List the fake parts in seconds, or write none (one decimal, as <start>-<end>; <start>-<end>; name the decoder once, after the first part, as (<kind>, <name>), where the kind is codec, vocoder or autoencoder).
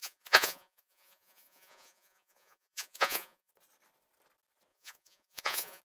0.0-3.5 (vocoder, Vocos); 4.7-5.8